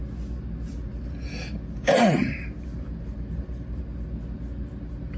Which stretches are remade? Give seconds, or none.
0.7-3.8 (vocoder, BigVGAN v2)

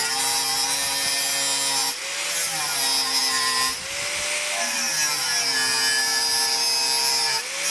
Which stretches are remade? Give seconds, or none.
none

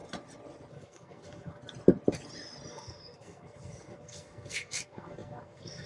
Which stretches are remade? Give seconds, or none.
0.7-1.6 (codec, SNAC); 2.7-5.9

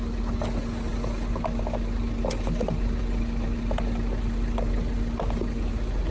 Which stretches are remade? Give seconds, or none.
none

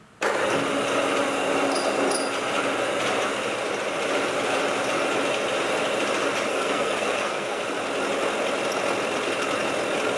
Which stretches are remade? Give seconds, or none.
6.5-7.6 (codec, SNAC)

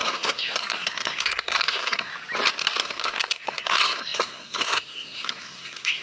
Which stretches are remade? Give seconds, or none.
0.0-2.1 (codec, SNAC); 2.8-6.0

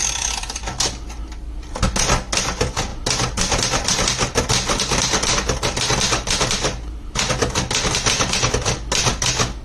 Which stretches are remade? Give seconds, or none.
none

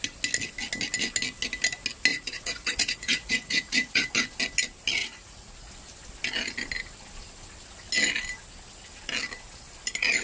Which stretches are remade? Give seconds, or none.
2.1-4.1 (vocoder, Vocos); 5.0-5.7